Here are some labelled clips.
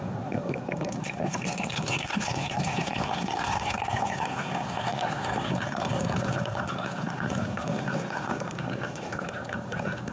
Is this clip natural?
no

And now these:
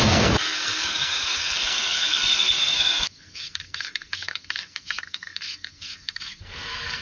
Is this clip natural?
no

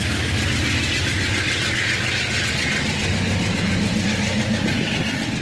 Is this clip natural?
yes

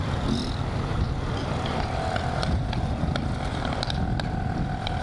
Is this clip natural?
yes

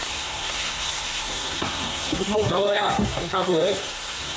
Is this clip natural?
no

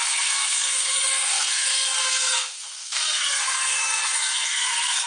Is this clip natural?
no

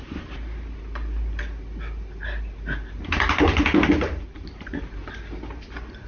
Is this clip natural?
yes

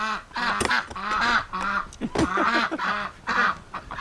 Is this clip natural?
yes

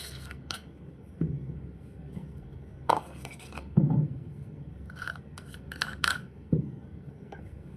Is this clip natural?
no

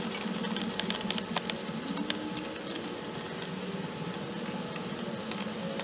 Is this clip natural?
yes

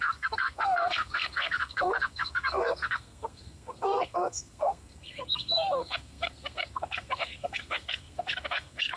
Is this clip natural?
no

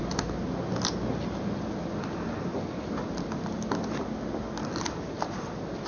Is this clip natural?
yes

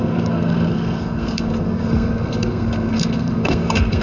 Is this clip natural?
no